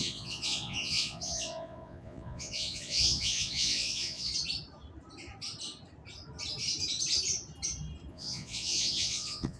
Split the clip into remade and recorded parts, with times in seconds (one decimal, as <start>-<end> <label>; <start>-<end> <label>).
0.0-4.3 remade; 4.3-8.1 recorded; 8.1-9.6 remade